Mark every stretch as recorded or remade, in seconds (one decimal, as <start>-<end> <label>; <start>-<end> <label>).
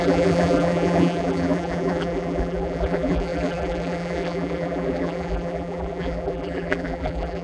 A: 0.0-7.4 remade